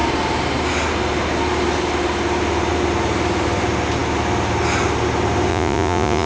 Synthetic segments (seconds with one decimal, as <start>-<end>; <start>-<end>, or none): 5.5-6.3